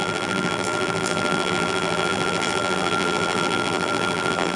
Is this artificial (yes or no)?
yes